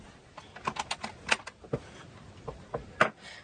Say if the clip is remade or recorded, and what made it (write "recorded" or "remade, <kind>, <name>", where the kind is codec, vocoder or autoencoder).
recorded